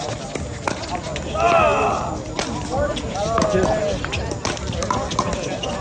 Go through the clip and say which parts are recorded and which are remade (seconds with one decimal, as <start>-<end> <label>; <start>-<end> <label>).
0.0-5.8 recorded